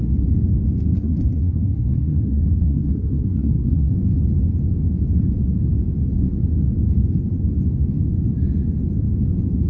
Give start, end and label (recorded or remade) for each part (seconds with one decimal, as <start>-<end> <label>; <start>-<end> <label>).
0.0-1.0 recorded; 1.0-3.9 remade; 3.9-9.7 recorded